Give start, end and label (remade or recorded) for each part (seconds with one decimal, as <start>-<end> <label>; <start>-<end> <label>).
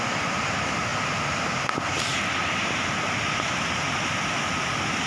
0.0-5.1 recorded